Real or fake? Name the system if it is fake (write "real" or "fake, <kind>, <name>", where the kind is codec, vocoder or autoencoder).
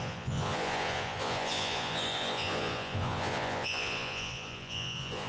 fake, vocoder, Vocos